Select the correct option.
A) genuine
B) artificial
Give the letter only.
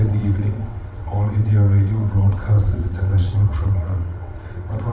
B